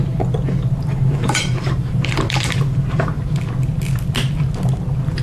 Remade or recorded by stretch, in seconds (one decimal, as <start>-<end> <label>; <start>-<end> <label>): 0.0-0.9 recorded; 0.9-3.2 remade; 3.2-5.2 recorded